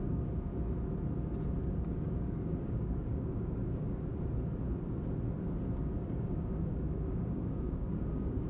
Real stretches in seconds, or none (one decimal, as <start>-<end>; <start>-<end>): 0.5-1.6; 4.1-5.8